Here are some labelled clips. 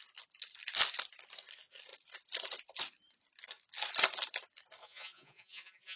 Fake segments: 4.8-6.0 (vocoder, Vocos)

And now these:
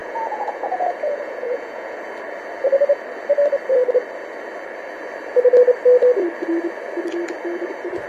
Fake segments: 0.0-2.0 (vocoder, Vocos)